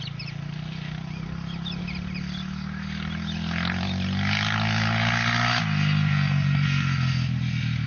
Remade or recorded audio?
recorded